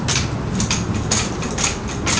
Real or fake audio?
real